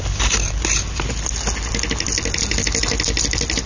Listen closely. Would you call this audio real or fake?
real